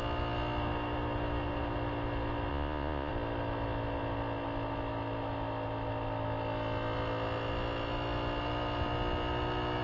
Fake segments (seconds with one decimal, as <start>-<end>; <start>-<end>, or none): 2.5-3.1